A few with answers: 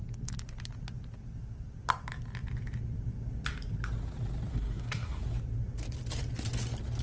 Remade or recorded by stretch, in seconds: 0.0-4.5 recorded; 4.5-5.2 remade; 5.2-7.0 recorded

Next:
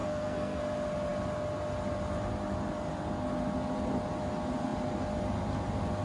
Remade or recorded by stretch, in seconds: 0.0-0.6 remade; 0.6-6.0 recorded

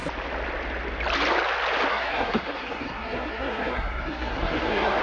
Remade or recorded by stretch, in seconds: 0.0-1.9 recorded; 1.9-5.0 remade

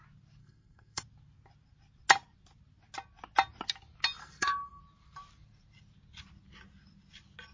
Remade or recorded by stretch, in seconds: 0.0-0.4 recorded; 0.4-1.0 remade; 1.0-4.2 recorded; 4.2-4.8 remade; 4.8-7.5 recorded

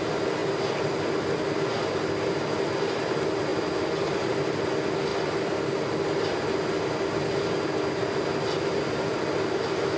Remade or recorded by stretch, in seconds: 0.0-10.0 recorded

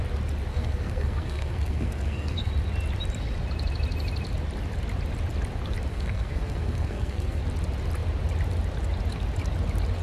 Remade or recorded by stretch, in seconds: 0.0-0.5 recorded; 0.5-2.5 remade; 2.5-5.9 recorded; 5.9-7.4 remade; 7.4-10.0 recorded

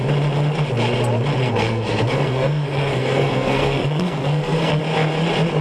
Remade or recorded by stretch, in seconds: 0.0-1.4 recorded; 1.4-4.8 remade; 4.8-5.6 recorded

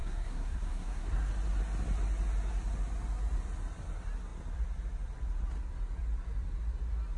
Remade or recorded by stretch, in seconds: 0.0-1.3 remade; 1.3-7.2 recorded